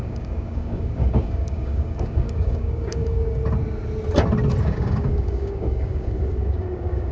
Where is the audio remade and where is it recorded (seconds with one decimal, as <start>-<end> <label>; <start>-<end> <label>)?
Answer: 0.0-3.4 remade; 3.4-4.6 recorded; 4.6-7.1 remade